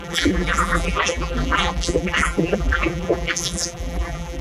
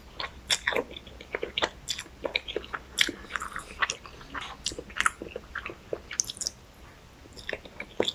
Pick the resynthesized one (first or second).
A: first